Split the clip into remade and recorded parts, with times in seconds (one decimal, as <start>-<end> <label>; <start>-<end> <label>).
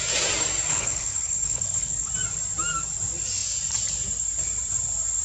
0.0-0.7 recorded; 0.7-2.1 remade; 2.1-5.2 recorded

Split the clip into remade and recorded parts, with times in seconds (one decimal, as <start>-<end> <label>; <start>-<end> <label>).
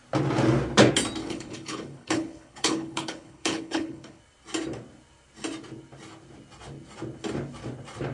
0.0-1.2 recorded; 1.2-4.2 remade; 4.2-8.1 recorded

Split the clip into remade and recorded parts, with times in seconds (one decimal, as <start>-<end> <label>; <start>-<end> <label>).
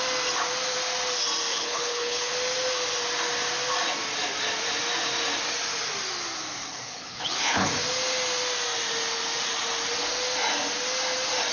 0.0-1.5 recorded; 1.5-2.3 remade; 2.3-6.6 recorded; 6.6-7.7 remade; 7.7-11.5 recorded